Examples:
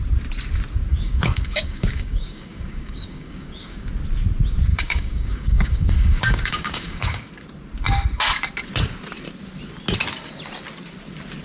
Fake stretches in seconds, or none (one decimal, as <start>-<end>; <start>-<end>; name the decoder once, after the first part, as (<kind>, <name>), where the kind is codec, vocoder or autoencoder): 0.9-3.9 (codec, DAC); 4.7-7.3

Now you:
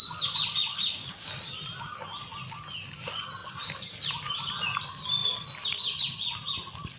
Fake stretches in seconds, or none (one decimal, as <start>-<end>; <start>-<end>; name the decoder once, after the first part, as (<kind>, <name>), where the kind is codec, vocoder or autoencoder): 0.7-1.3 (codec, DAC)

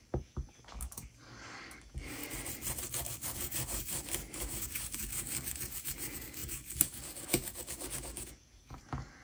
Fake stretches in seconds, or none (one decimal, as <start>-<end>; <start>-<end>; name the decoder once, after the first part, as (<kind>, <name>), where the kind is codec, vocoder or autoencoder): 0.0-2.2 (codec, DAC); 2.9-9.2